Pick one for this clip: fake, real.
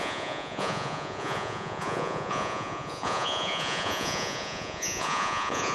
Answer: fake